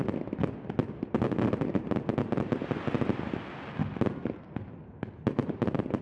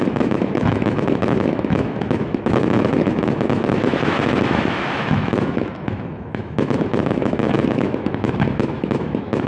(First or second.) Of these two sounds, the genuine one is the first